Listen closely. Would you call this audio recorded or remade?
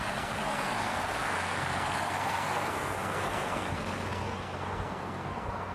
remade